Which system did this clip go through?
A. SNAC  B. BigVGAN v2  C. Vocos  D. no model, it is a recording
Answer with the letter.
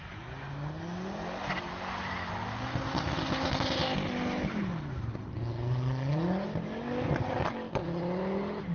D